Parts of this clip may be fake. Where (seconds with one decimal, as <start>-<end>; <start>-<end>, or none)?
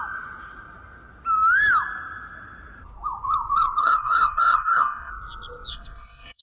3.8-5.1; 5.7-6.4